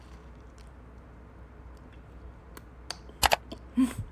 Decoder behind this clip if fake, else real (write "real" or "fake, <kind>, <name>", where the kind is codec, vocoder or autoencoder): real